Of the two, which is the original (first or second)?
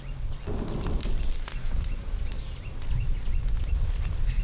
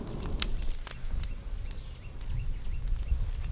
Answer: second